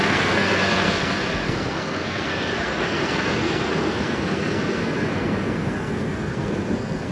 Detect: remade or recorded remade